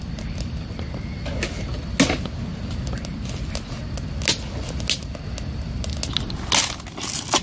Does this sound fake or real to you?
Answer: real